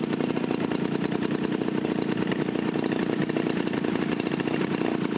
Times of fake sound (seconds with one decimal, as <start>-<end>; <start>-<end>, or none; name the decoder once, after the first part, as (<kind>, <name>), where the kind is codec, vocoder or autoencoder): none